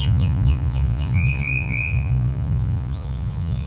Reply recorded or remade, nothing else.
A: remade